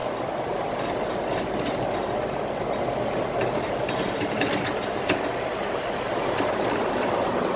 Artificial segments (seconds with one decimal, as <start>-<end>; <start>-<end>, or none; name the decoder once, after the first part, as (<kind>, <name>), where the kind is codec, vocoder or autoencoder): none